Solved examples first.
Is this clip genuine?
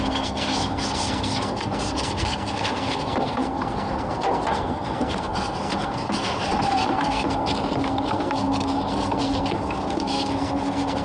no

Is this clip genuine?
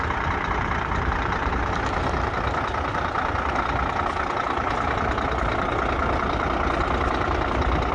yes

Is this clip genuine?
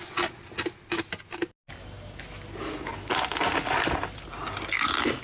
yes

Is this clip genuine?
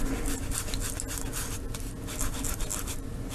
yes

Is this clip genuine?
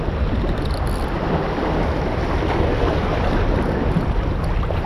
yes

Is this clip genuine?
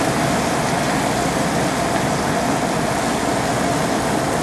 yes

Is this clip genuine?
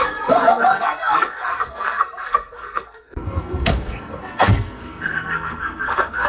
no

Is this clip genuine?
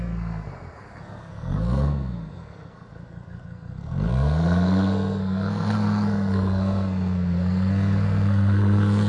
no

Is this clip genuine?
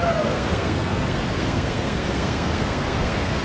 no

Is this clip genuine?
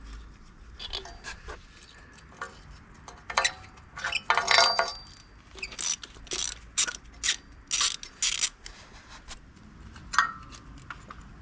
yes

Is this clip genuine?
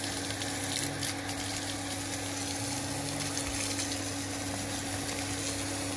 yes